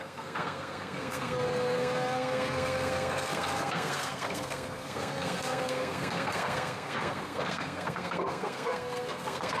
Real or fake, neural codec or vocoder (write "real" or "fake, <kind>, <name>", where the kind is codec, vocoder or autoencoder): fake, codec, SNAC